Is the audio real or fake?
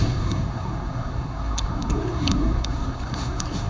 fake